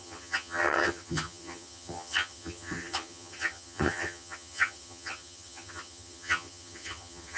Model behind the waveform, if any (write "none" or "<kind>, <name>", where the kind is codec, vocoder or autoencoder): vocoder, HiFi-GAN